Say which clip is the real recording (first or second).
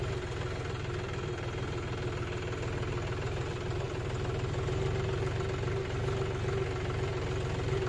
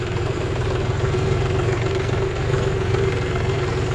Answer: first